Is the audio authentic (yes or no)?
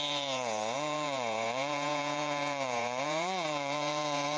no